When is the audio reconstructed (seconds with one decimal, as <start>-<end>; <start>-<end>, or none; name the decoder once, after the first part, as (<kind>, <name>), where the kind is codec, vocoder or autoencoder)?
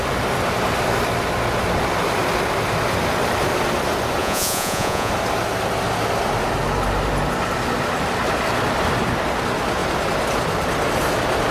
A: 4.2-5.1 (vocoder, Vocos)